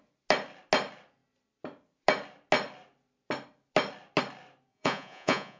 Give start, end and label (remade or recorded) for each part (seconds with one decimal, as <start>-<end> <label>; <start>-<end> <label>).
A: 0.0-4.7 recorded; 4.7-5.6 remade